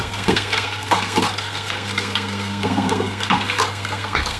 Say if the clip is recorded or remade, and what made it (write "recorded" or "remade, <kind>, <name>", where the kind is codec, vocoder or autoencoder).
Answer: remade, codec, SNAC